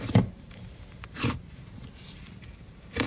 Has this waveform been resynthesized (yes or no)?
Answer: yes